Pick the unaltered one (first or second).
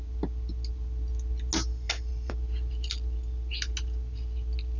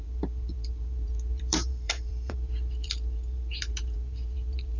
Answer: first